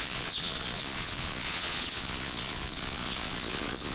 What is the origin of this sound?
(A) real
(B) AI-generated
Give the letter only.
B